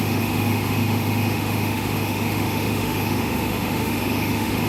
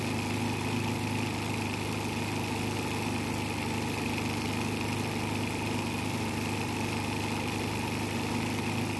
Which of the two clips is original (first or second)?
second